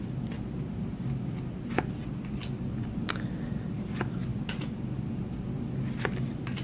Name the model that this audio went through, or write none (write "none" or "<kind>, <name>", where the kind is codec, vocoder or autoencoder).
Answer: none